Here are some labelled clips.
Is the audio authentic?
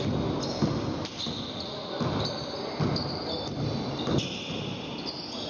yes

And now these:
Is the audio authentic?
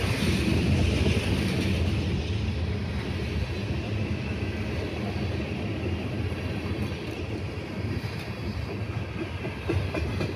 yes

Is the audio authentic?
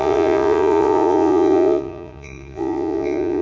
no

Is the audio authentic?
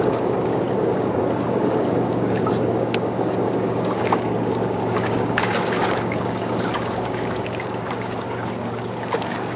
no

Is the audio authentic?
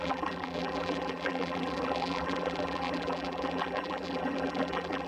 no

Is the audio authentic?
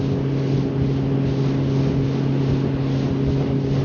yes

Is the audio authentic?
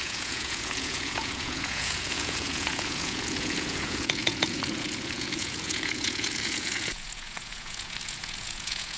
no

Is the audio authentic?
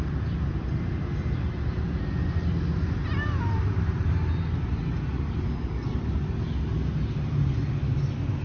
yes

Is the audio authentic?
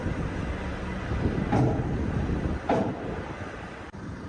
no